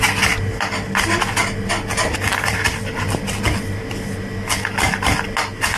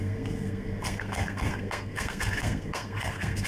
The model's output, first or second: second